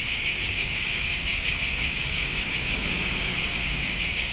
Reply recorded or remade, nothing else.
remade